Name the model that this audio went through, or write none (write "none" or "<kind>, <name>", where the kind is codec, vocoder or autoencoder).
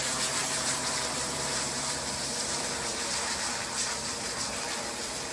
vocoder, BigVGAN v2